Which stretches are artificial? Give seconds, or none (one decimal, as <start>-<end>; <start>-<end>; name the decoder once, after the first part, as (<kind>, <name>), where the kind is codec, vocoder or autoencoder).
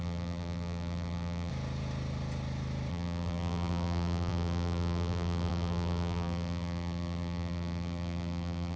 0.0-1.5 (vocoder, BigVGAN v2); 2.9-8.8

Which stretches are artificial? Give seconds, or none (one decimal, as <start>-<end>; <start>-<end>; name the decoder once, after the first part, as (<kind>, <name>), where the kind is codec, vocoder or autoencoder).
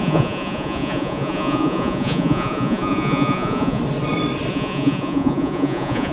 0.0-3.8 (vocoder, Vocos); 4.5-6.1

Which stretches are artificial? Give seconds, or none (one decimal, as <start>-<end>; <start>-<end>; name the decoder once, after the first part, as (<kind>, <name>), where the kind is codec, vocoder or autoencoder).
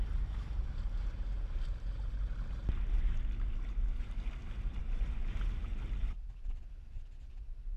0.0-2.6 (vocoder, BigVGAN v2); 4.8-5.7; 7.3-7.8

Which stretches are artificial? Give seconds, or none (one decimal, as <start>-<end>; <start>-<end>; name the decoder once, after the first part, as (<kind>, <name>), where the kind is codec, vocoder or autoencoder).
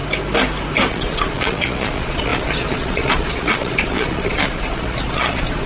0.9-5.7 (vocoder, Vocos)